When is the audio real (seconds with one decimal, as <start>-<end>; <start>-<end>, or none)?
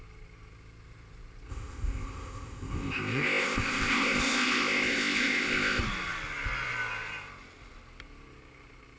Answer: 0.0-1.5; 5.8-9.0